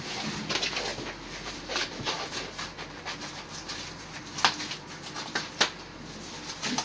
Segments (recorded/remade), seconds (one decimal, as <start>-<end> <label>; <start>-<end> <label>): 0.0-0.9 recorded; 0.9-4.2 remade; 4.2-6.8 recorded